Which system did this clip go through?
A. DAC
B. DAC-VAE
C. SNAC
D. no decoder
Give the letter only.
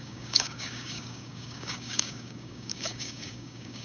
A